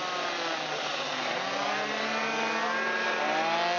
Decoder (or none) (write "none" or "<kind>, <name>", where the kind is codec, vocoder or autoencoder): none